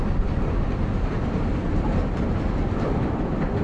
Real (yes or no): yes